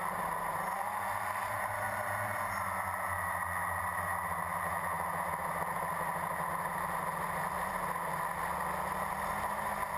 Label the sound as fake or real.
real